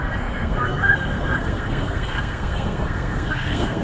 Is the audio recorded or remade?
remade